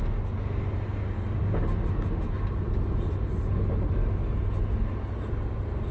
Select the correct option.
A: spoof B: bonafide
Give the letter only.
B